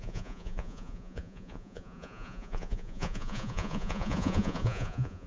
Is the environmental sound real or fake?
fake